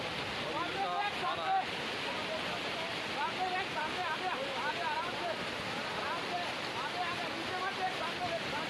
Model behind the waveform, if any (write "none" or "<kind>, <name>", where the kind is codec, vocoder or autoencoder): none